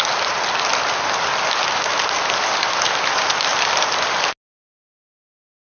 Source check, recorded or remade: recorded